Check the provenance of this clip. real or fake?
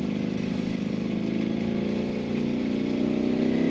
real